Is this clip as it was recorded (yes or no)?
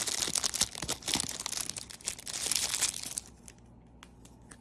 yes